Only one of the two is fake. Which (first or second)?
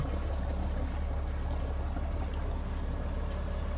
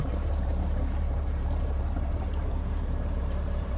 second